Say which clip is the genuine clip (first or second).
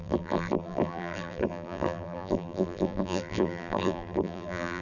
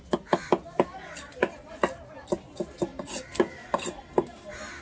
second